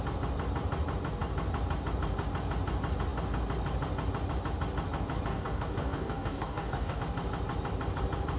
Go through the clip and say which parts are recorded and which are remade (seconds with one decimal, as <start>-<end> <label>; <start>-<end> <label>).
0.0-5.3 recorded; 5.3-7.0 remade; 7.0-8.4 recorded